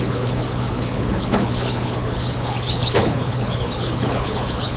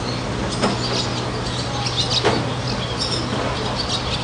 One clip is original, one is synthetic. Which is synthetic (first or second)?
first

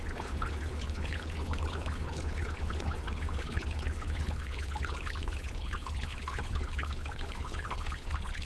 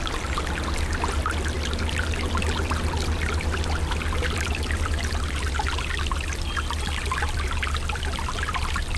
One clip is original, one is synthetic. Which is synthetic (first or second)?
first